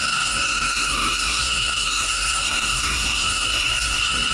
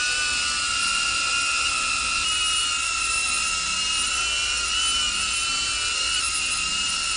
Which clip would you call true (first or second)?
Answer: second